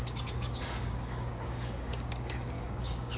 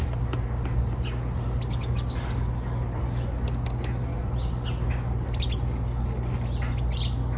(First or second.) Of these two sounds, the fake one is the first